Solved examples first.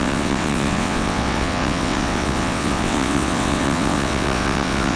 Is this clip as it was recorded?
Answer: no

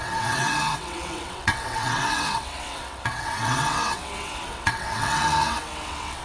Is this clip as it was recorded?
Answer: no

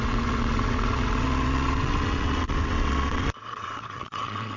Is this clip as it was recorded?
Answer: no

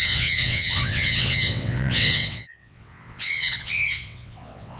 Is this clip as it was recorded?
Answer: no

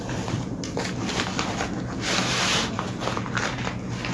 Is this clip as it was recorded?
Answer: yes